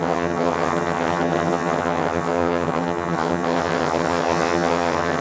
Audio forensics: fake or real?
fake